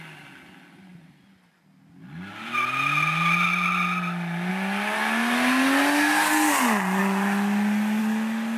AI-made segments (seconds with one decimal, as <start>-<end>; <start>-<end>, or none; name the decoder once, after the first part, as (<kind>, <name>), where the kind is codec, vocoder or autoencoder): none